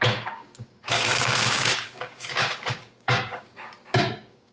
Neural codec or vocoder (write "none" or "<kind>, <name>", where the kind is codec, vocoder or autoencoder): codec, DAC